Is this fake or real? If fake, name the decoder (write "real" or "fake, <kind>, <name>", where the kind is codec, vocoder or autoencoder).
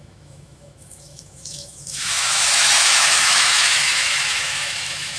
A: fake, autoencoder, DAC-VAE